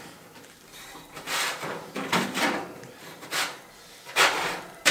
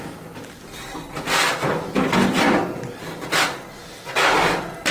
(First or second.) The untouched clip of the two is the second